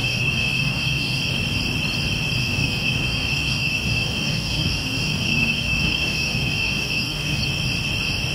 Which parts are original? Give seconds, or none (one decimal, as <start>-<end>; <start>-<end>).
1.3-2.4; 7.4-8.3